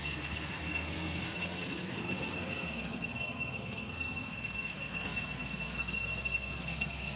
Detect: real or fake fake